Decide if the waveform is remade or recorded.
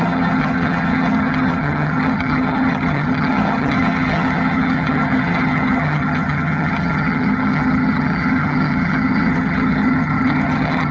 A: remade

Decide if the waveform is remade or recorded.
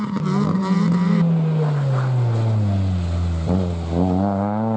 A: recorded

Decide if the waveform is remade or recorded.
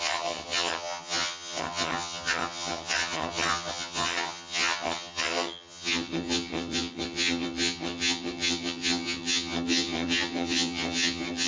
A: remade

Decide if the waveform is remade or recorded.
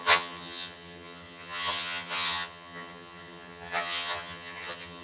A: remade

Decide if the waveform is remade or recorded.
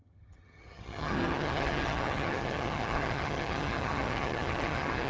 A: remade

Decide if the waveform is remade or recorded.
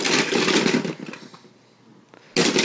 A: recorded